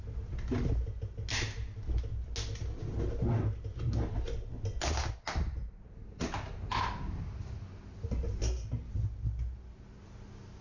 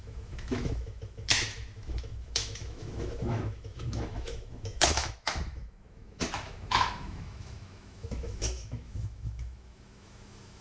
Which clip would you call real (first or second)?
first